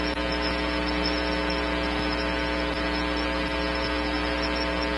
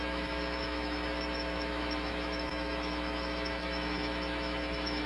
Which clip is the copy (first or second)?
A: second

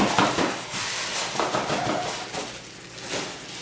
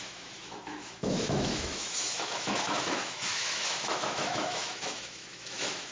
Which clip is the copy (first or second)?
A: second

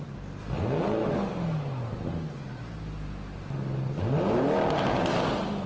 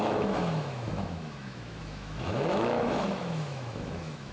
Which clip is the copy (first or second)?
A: second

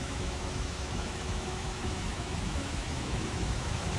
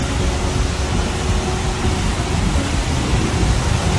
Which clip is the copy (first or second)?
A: first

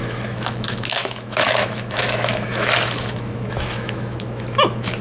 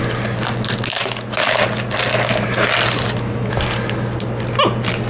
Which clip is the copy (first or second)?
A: first